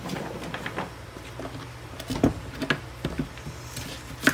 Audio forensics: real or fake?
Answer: real